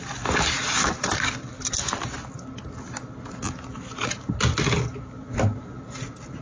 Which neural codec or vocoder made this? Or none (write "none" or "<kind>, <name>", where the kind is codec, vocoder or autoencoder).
none